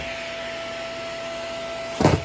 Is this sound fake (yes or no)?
no